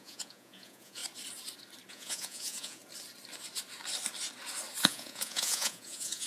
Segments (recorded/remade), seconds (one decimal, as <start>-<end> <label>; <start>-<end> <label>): 0.0-1.0 remade; 1.0-1.9 recorded; 1.9-2.8 remade; 2.8-4.8 recorded; 4.8-6.3 remade